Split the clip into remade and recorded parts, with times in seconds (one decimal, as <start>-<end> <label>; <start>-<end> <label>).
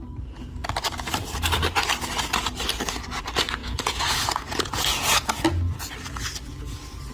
0.0-3.6 recorded; 3.6-5.3 remade; 5.3-7.1 recorded